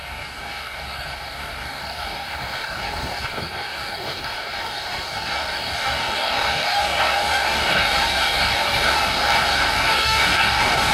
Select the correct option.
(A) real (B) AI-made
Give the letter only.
B